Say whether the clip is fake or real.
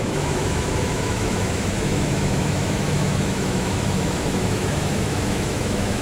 fake